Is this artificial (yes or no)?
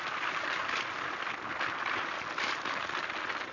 yes